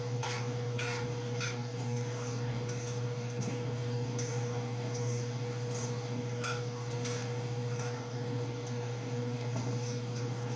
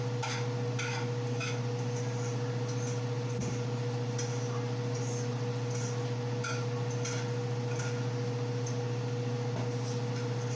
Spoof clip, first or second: first